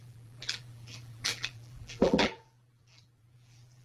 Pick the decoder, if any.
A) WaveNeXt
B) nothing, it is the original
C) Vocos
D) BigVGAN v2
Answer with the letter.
D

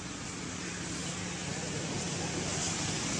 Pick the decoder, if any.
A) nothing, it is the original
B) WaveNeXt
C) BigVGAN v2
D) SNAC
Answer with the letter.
A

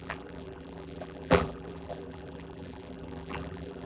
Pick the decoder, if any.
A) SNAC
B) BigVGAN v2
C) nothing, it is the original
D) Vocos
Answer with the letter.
B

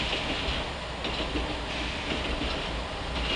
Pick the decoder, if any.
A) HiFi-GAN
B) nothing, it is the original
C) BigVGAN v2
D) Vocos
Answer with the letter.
B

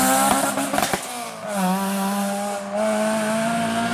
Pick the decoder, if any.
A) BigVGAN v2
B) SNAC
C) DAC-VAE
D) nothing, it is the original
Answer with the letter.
D